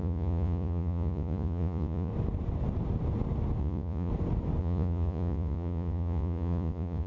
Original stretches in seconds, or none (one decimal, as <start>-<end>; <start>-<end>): 2.1-3.6; 4.1-4.6